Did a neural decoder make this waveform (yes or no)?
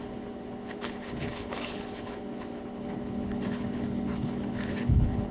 yes